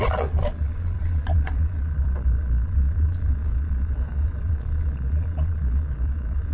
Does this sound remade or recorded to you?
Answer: remade